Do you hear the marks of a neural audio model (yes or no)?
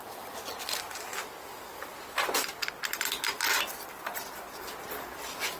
no